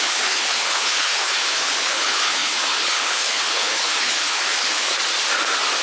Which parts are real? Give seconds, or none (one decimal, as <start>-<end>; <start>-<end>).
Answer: 4.9-5.8